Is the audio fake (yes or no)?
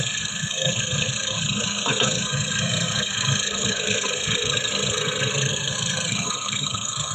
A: yes